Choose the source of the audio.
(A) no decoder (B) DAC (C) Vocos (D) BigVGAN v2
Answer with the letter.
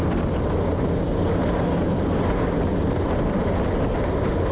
A